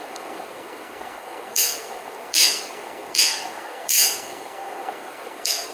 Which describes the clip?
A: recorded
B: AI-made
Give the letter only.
B